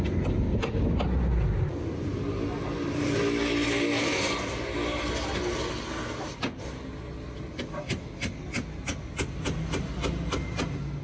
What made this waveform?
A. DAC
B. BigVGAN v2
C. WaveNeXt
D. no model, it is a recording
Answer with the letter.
D